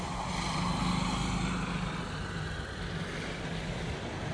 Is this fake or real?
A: real